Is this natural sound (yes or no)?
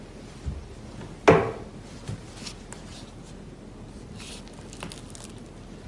yes